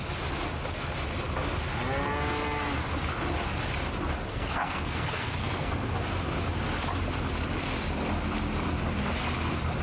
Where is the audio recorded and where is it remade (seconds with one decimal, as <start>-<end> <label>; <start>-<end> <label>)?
0.0-4.3 recorded; 4.3-5.7 remade; 5.7-9.8 recorded